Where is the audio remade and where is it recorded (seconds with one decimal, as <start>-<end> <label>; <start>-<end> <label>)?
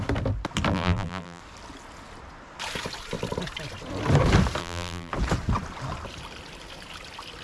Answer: 0.0-0.7 recorded; 0.7-1.4 remade; 1.4-4.6 recorded; 4.6-5.1 remade; 5.1-7.4 recorded